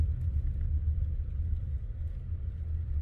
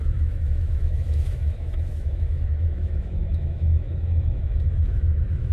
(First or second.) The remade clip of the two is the second